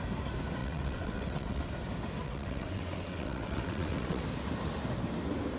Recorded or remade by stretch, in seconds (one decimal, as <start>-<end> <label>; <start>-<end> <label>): 0.0-0.6 recorded; 0.6-1.6 remade; 1.6-2.2 recorded; 2.2-4.2 remade; 4.2-5.6 recorded

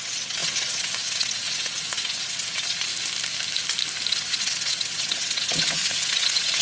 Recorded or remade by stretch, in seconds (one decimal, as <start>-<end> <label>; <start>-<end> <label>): 0.0-2.9 remade; 2.9-4.1 recorded; 4.1-6.6 remade

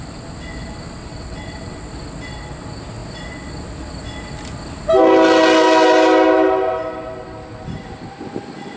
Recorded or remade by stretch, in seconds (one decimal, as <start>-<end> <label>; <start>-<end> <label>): 0.0-1.0 recorded; 1.0-1.8 remade; 1.8-8.8 recorded